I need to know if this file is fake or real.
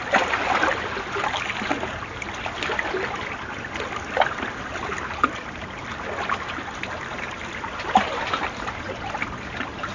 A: real